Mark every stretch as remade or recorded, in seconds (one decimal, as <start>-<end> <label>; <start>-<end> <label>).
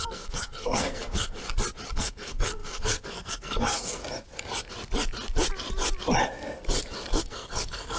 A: 0.0-1.4 remade; 1.4-1.9 recorded; 1.9-4.0 remade; 4.0-7.2 recorded; 7.2-8.0 remade